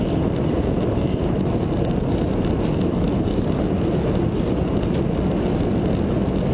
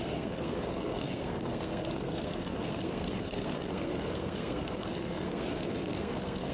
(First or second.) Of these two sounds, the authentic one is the first